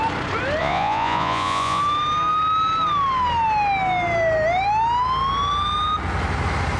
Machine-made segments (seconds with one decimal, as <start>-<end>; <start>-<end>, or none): 0.6-1.8